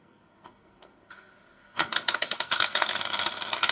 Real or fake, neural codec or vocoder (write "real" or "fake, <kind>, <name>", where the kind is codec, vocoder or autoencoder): fake, codec, SNAC